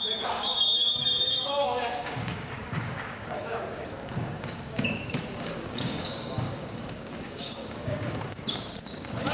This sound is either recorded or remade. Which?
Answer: remade